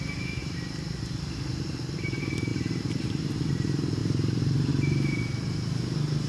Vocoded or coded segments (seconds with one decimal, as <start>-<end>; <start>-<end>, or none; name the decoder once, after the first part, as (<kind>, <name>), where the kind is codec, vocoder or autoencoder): 0.4-1.4 (vocoder, BigVGAN v2); 2.5-3.3; 4.0-4.7